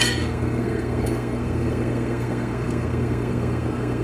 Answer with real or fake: fake